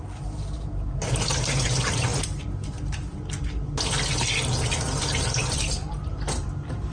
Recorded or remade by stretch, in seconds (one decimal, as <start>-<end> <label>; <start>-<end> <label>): 0.0-2.1 remade; 2.1-5.0 recorded; 5.0-6.9 remade